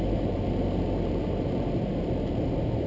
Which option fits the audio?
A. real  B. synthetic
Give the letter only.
A